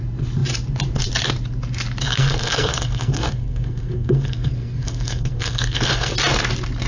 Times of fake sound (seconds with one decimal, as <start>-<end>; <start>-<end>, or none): 2.0-6.1